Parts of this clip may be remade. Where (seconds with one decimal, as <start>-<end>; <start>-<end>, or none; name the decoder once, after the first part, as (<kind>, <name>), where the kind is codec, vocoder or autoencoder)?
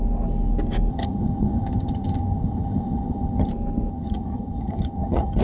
0.9-3.5 (vocoder, HiFi-GAN); 3.9-5.4